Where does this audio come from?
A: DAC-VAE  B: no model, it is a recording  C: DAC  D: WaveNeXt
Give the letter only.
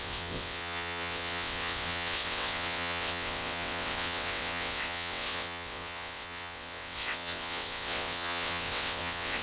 D